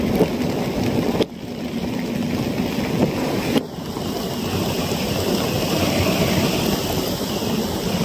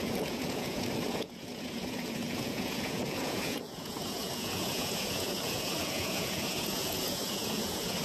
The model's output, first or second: second